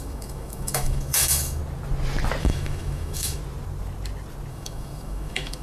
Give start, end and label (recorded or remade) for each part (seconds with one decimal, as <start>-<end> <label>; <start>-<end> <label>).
0.0-1.6 remade; 1.6-2.4 recorded; 2.4-3.4 remade; 3.4-4.5 recorded; 4.5-5.6 remade

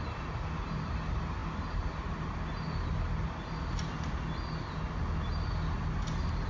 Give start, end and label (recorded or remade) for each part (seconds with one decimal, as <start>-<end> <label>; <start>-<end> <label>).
0.0-6.5 recorded

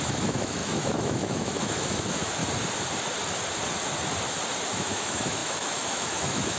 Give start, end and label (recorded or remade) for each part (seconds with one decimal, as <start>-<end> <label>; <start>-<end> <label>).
0.0-2.4 remade; 2.4-4.7 recorded; 4.7-6.6 remade